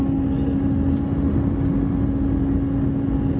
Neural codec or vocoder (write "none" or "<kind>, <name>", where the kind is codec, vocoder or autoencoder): none